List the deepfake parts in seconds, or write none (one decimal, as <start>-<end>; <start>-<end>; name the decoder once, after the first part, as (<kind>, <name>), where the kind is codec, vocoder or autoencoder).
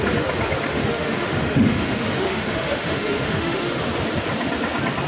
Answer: 0.7-3.8 (autoencoder, DAC-VAE)